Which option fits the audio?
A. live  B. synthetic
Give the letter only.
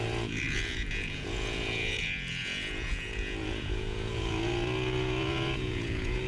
B